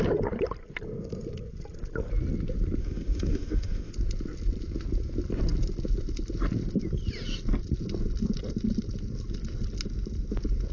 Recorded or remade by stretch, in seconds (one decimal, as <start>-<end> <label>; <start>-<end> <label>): 0.0-2.8 recorded; 2.8-3.9 remade; 3.9-10.7 recorded